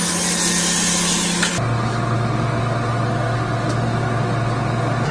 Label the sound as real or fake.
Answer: real